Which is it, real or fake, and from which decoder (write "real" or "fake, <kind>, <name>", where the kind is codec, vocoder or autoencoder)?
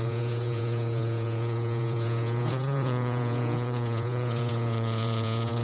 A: fake, vocoder, Vocos